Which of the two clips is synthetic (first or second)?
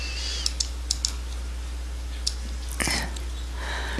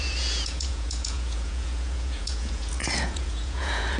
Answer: second